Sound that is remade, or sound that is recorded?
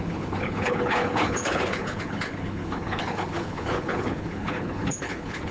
remade